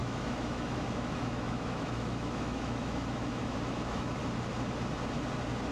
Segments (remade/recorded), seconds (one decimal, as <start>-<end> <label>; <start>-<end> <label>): 0.0-4.2 remade; 4.2-5.7 recorded